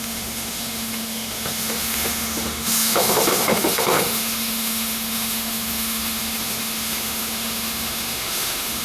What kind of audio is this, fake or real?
fake